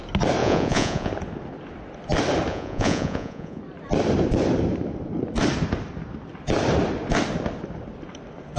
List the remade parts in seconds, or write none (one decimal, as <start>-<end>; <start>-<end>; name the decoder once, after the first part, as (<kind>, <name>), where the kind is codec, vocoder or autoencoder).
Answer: 0.4-1.1 (vocoder, Vocos); 2.5-3.6